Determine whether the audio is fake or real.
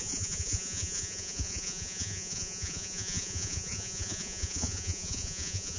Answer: fake